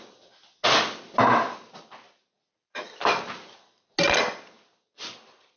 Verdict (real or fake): real